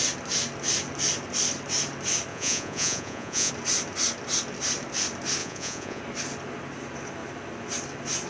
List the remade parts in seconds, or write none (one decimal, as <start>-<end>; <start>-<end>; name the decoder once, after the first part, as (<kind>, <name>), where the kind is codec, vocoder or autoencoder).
2.3-3.5 (vocoder, Vocos); 5.4-6.0